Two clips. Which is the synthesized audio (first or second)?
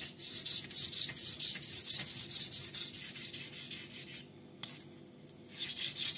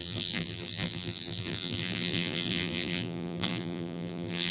second